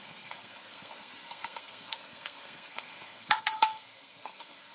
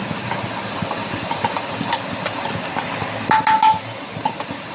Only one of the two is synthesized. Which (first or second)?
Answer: first